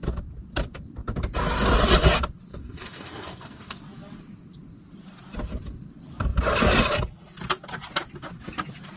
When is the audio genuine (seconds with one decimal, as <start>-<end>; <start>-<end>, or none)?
0.0-2.5; 3.8-9.0